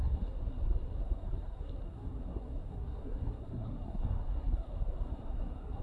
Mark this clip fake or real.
fake